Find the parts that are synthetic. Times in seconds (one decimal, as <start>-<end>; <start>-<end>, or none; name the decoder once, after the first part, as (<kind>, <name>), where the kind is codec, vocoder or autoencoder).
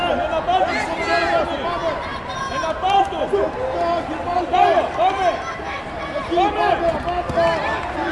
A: 2.1-7.0 (vocoder, BigVGAN v2)